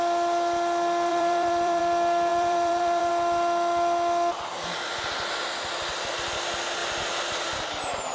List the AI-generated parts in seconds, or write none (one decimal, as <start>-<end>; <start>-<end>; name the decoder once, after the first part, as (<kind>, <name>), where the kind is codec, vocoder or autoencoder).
1.1-1.8 (vocoder, BigVGAN v2); 2.3-3.1